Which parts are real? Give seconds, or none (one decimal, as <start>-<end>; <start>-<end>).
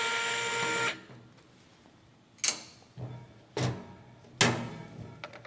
0.0-5.5